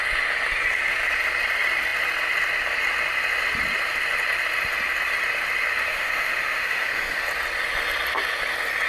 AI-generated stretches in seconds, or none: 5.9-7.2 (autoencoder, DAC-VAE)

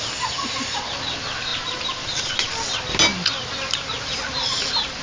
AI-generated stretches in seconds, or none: none